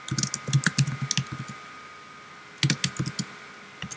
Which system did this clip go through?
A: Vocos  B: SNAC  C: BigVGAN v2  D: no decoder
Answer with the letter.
D